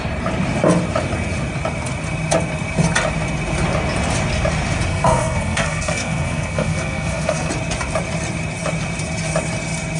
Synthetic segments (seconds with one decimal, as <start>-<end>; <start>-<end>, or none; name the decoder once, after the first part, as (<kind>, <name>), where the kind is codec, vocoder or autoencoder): 4.9-7.5 (codec, SNAC)